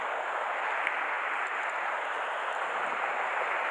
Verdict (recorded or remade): recorded